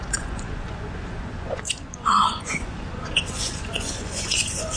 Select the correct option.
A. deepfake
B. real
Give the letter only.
A